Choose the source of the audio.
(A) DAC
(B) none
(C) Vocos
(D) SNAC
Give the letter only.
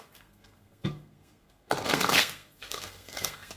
D